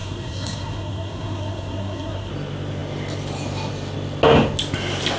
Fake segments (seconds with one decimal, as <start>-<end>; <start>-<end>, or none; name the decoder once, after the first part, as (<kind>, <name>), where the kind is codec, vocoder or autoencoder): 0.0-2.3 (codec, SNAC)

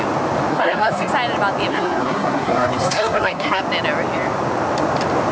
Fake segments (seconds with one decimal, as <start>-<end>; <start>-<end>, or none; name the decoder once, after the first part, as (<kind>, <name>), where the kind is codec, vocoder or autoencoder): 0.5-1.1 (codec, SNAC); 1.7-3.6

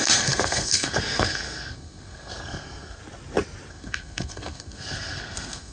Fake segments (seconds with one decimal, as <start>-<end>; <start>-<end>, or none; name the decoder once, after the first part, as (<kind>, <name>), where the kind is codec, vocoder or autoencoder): 0.0-3.0 (codec, SNAC); 3.7-5.7